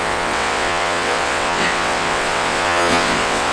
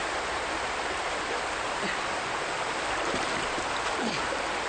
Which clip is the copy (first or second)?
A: first